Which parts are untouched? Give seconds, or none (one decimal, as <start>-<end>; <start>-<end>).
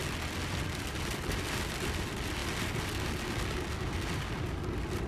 0.0-5.1